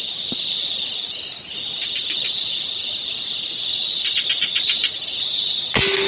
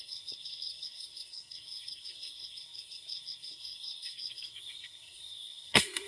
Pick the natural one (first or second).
first